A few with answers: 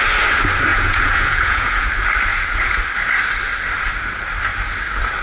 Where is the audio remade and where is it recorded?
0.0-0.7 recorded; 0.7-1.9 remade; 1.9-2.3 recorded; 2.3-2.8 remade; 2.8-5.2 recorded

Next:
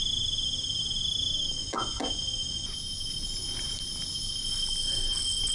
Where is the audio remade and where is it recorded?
0.0-1.6 recorded; 1.6-2.6 remade; 2.6-5.5 recorded

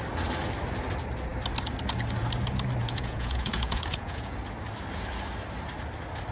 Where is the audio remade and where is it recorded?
0.0-2.8 recorded; 2.8-4.4 remade; 4.4-6.3 recorded

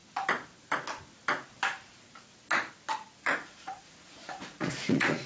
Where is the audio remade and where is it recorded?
0.0-3.2 recorded; 3.2-5.3 remade

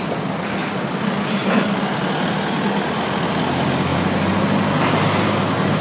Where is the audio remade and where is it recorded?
0.0-5.8 recorded

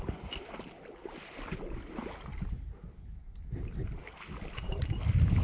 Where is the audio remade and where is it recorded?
0.0-5.4 recorded

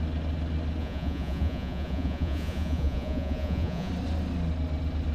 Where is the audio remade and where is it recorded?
0.0-0.8 recorded; 0.8-3.9 remade; 3.9-5.1 recorded

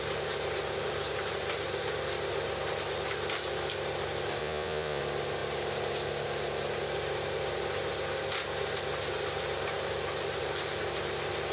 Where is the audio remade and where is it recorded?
0.0-4.4 recorded; 4.4-5.0 remade; 5.0-11.5 recorded